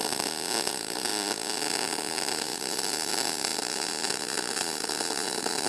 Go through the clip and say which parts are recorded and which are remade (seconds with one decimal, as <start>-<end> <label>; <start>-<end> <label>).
0.0-0.7 recorded; 0.7-1.1 remade; 1.1-2.1 recorded; 2.1-5.7 remade